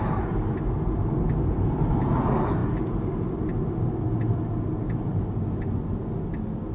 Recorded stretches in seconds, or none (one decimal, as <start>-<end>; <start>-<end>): 0.0-6.7